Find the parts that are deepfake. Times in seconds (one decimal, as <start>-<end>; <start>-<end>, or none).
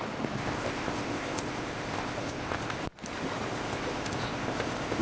0.4-2.8; 3.5-5.0